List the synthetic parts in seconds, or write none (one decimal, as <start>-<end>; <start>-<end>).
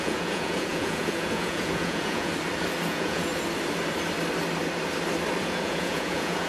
0.0-2.3; 2.9-3.3; 5.4-6.5